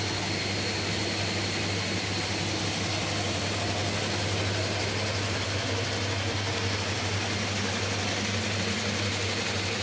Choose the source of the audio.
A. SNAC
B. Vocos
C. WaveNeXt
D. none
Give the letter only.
D